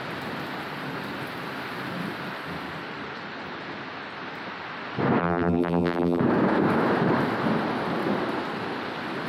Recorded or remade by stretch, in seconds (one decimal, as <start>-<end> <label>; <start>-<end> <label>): 0.0-5.2 recorded; 5.2-6.2 remade; 6.2-9.3 recorded